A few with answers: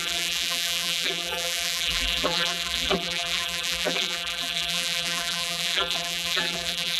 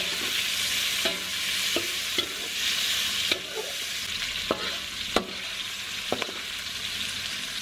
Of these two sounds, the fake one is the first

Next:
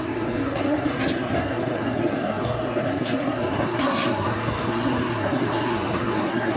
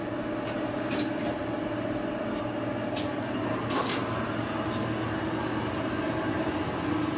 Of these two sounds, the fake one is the first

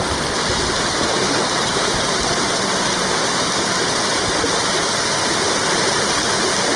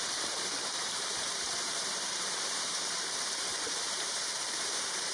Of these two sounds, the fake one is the second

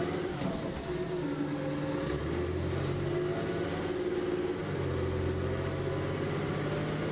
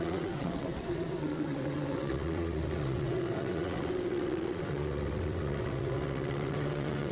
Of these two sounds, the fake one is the second